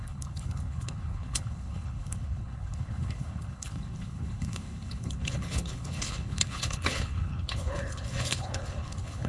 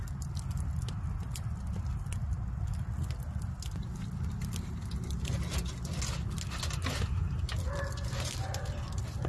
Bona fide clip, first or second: second